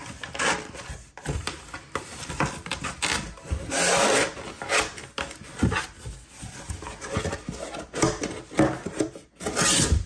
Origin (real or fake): real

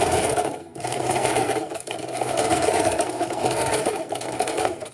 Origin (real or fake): fake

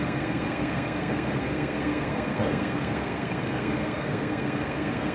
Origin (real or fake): fake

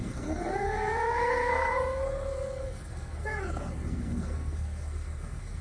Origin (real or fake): fake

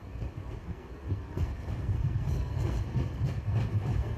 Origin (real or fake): fake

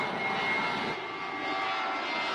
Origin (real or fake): real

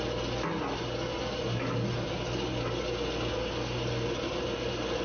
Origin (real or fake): real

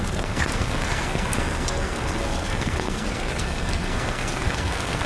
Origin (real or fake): fake